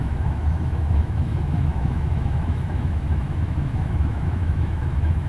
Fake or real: fake